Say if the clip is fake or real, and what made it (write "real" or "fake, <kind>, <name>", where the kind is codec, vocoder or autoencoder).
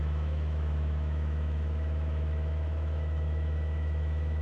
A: fake, autoencoder, DAC-VAE